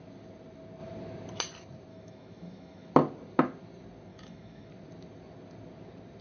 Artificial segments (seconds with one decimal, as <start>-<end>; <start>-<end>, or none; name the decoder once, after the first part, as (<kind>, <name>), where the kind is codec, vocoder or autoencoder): 1.9-2.9 (autoencoder, DAC-VAE); 4.1-4.7